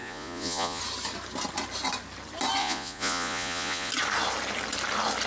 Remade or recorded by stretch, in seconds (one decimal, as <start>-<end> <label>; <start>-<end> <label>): 0.0-0.8 remade; 0.8-2.6 recorded; 2.6-3.9 remade; 3.9-5.3 recorded

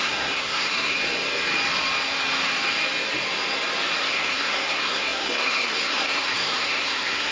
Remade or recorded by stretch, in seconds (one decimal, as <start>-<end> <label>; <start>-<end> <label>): 0.0-1.0 remade; 1.0-4.1 recorded; 4.1-7.3 remade